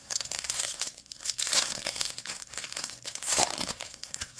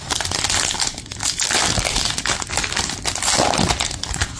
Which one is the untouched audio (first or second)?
second